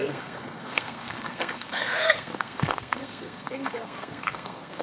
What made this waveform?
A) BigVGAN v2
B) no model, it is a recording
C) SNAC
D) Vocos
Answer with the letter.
C